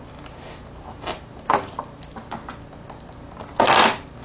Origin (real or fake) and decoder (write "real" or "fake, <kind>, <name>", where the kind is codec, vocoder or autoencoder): real